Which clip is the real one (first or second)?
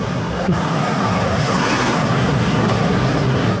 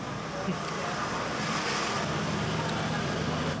second